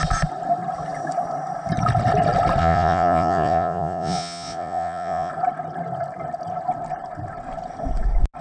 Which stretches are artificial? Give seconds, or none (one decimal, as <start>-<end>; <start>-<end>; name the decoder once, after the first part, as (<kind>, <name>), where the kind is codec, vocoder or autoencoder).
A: 2.6-5.3 (vocoder, Vocos)